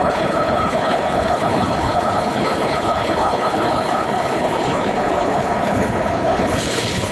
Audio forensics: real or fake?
fake